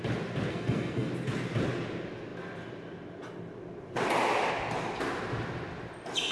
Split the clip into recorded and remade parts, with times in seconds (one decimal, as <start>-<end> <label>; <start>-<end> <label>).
0.0-0.5 recorded; 0.5-1.1 remade; 1.1-6.3 recorded